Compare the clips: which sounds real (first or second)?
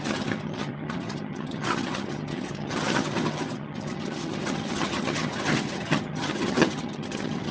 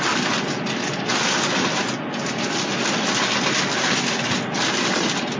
second